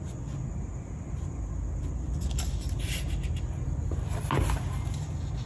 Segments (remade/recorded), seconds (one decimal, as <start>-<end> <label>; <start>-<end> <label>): 0.0-0.7 recorded; 0.7-3.8 remade; 3.8-5.5 recorded